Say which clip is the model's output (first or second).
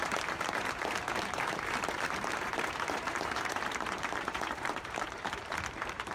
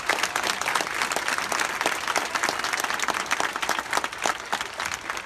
first